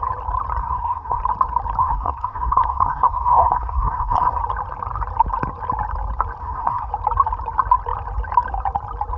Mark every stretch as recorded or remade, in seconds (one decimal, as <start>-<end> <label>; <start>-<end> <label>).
0.0-0.6 recorded; 0.6-1.2 remade; 1.2-1.8 recorded; 1.8-4.4 remade; 4.4-6.4 recorded; 6.4-6.9 remade; 6.9-9.2 recorded